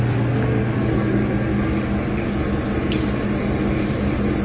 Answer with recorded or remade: recorded